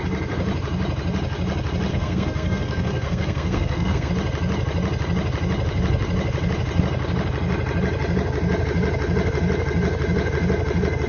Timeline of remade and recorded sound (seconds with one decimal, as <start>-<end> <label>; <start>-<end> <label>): 0.0-1.9 recorded; 1.9-4.1 remade; 4.1-11.1 recorded